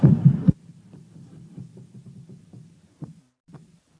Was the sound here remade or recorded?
remade